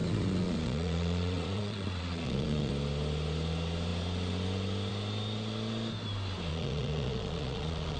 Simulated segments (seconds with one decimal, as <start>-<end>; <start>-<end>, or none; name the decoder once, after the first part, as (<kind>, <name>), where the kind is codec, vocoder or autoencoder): 0.0-2.7 (vocoder, Vocos); 6.5-8.0